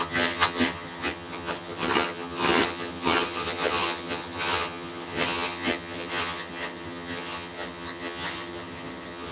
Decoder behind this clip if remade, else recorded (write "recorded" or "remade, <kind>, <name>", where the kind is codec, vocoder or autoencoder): remade, vocoder, HiFi-GAN